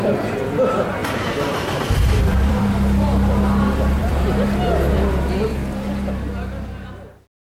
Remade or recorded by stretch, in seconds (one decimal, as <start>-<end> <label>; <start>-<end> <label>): 0.0-1.0 recorded; 1.0-2.6 remade; 2.6-4.0 recorded; 4.0-5.1 remade; 5.1-7.4 recorded